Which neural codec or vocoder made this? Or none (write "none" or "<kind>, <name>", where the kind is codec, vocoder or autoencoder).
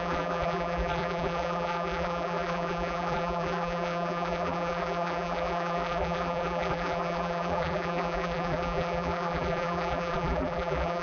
vocoder, BigVGAN v2